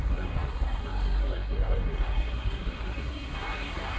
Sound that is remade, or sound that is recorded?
remade